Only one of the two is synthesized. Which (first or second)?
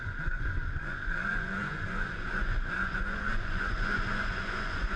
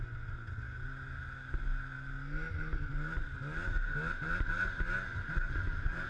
first